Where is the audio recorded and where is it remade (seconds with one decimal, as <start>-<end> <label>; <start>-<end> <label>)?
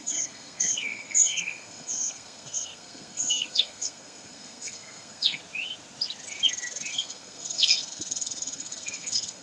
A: 0.0-5.4 remade; 5.4-6.9 recorded; 6.9-9.4 remade